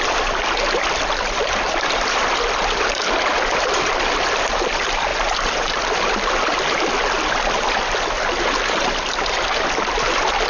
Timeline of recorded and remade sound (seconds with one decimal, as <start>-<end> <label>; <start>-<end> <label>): 0.0-10.5 recorded